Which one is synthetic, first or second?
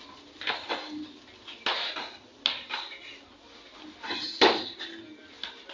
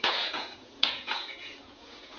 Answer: second